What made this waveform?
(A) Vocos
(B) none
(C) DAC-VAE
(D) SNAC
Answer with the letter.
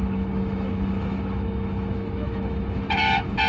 C